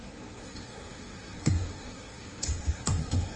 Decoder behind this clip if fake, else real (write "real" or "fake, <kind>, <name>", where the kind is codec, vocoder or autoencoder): fake, codec, SNAC